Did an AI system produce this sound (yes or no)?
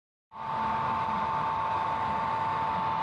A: yes